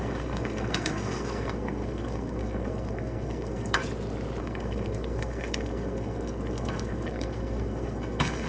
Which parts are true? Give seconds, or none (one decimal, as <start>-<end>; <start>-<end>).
3.8-4.4